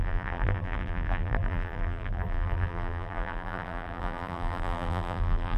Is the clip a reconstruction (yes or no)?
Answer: yes